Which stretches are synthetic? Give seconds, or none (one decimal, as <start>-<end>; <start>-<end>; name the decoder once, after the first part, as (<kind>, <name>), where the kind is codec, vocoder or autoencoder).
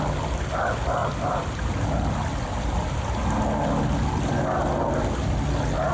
none